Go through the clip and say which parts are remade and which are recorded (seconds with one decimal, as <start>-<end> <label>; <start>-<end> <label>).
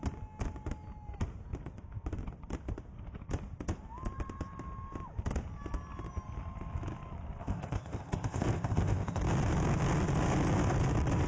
0.0-7.4 recorded; 7.4-9.2 remade; 9.2-11.3 recorded